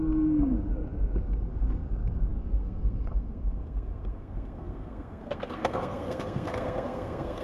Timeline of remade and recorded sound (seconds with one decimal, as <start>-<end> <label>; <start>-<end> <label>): 0.0-0.7 remade; 0.7-1.2 recorded; 1.2-7.4 remade